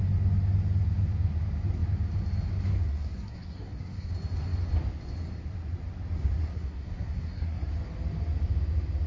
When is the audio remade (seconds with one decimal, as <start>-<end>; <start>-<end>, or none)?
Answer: 2.9-4.1; 6.4-7.7